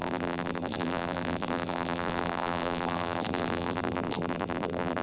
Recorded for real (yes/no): no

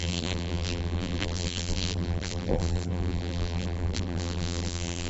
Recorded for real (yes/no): no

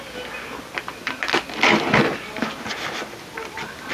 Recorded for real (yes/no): yes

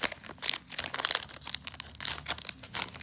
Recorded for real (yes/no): yes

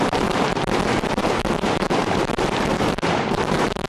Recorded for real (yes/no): no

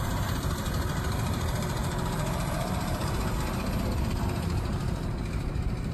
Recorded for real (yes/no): no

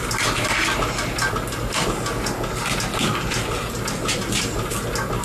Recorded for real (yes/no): yes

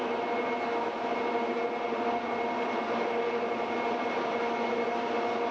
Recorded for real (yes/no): yes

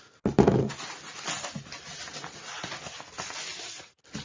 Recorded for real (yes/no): yes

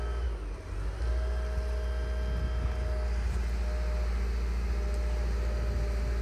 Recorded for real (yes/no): yes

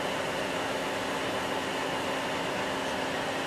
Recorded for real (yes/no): yes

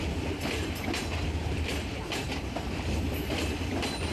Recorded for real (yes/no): yes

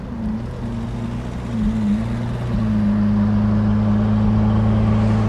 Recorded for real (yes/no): yes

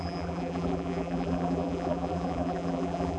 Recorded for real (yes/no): no